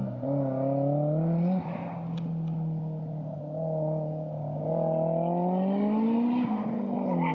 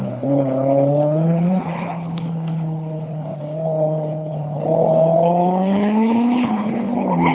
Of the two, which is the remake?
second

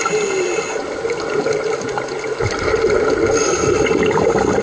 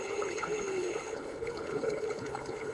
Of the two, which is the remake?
second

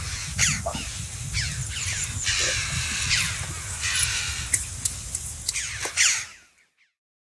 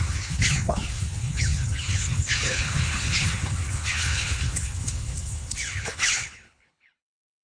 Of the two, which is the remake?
second